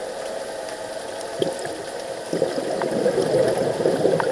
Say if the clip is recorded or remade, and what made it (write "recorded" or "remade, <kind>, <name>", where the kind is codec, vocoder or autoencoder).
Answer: recorded